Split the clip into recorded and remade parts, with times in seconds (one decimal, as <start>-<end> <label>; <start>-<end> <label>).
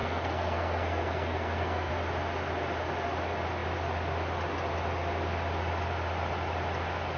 0.0-1.9 remade; 1.9-7.2 recorded